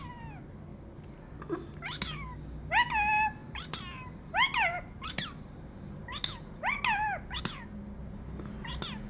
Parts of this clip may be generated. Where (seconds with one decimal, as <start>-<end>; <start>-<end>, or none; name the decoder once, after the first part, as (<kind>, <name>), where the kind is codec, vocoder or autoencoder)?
none